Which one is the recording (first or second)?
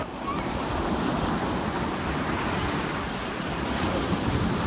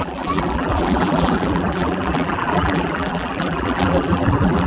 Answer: first